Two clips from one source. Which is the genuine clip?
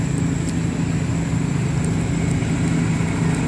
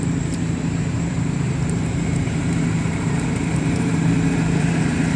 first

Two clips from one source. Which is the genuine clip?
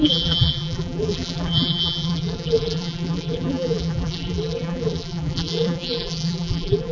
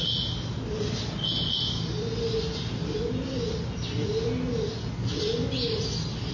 second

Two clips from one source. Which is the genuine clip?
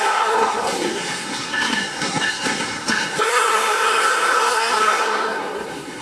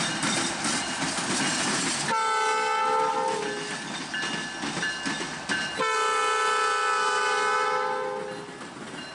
second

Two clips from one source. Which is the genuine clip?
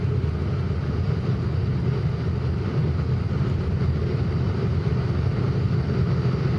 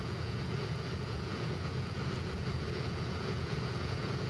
first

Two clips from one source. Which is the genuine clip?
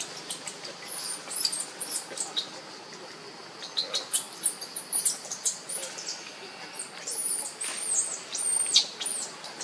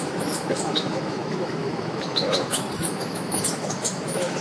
first